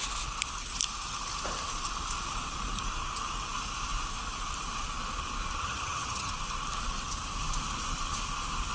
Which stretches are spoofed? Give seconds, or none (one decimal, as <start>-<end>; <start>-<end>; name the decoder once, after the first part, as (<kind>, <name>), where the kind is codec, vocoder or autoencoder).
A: 5.6-6.3 (vocoder, HiFi-GAN)